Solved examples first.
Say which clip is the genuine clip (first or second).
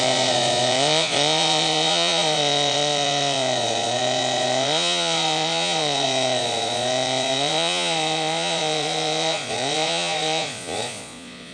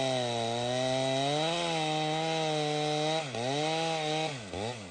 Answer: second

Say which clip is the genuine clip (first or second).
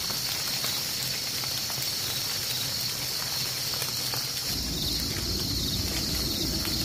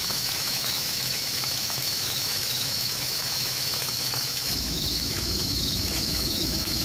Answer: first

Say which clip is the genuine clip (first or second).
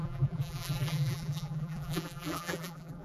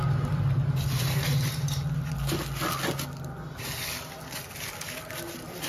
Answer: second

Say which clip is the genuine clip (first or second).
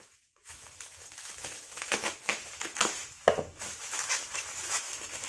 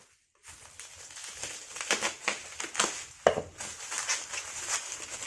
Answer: second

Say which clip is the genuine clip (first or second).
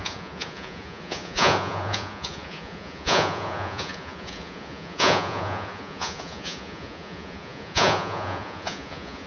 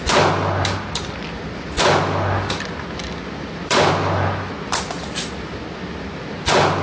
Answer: second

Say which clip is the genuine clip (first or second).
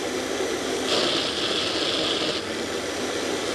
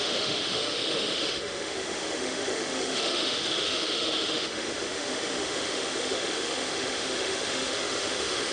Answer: first